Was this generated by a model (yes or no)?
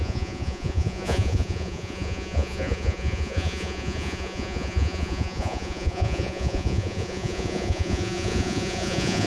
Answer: yes